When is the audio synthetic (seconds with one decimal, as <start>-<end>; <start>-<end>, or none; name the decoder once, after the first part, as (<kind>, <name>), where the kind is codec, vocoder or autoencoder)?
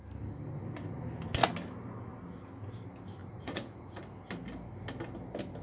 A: 3.2-4.0 (vocoder, Vocos)